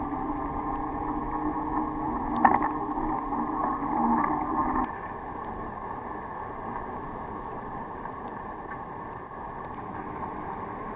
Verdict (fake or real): real